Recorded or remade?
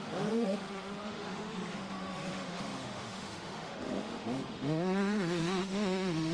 remade